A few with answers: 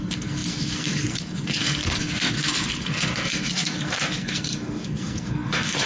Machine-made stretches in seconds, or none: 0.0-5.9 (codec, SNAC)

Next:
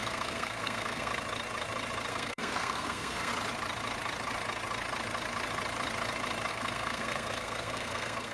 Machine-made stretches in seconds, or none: 0.0-1.1 (codec, SNAC); 2.1-3.3; 6.5-8.3

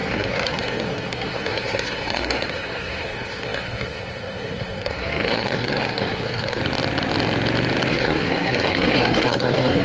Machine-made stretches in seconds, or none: 0.0-6.6 (codec, SNAC); 7.9-9.8

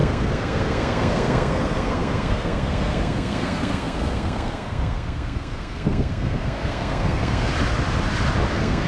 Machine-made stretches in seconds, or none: 0.0-7.5 (codec, SNAC); 8.5-8.9

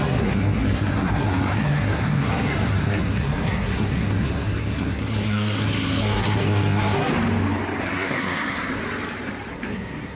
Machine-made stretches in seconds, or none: 0.0-7.1 (codec, SNAC); 7.8-8.8; 9.5-10.2